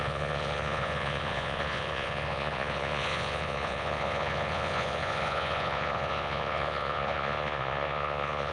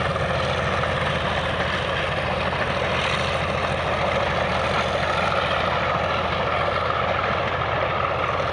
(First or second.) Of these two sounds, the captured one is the second